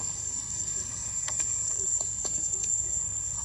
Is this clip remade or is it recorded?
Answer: remade